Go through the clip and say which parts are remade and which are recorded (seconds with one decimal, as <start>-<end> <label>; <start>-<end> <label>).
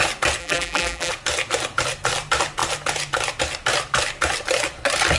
0.0-0.4 recorded; 0.4-1.1 remade; 1.1-5.2 recorded